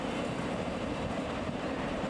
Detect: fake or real fake